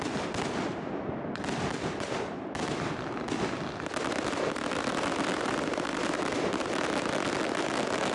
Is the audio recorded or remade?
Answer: recorded